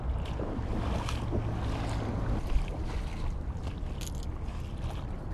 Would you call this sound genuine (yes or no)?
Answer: yes